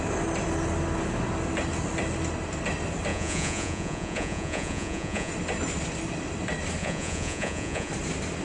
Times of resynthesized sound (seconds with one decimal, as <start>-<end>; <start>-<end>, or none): 3.1-5.3; 6.8-7.9